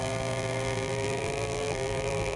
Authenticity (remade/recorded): remade